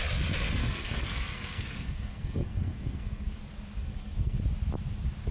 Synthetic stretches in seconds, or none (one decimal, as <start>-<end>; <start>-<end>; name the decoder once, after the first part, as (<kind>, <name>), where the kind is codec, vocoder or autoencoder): 0.6-3.4 (codec, SNAC); 3.8-4.4